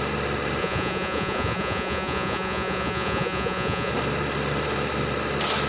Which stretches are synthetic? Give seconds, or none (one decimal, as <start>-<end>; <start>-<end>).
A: 0.6-3.9